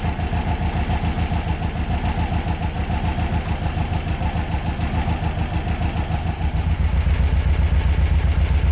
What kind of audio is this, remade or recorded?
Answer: recorded